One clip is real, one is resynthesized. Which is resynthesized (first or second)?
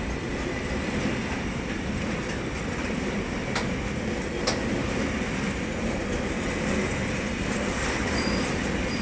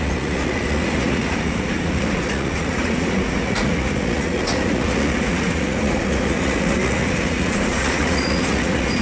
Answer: second